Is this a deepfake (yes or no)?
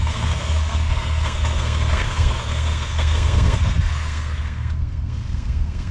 yes